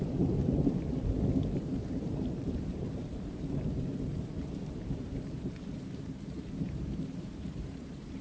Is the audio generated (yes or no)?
yes